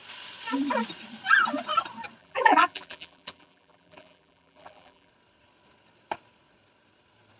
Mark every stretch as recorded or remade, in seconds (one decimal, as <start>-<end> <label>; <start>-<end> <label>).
0.0-2.2 recorded; 2.2-5.1 remade; 5.1-7.4 recorded